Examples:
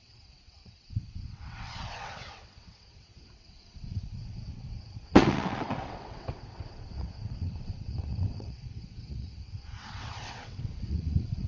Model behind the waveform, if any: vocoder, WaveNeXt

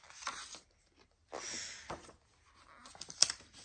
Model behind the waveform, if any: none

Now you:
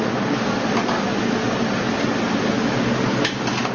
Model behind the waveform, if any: none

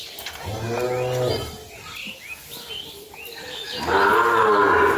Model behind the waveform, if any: none